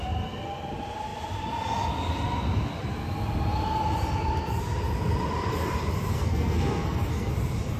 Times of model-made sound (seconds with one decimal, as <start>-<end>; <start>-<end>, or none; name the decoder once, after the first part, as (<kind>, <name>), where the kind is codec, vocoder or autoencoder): 6.1-7.3 (codec, SNAC)